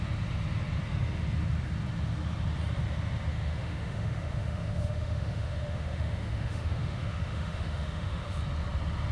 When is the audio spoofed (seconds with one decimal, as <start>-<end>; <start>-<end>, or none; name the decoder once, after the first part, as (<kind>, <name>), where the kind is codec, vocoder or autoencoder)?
3.3-8.4 (autoencoder, DAC-VAE)